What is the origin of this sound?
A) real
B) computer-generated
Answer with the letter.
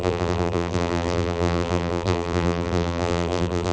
B